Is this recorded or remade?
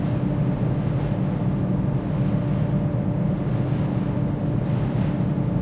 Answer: recorded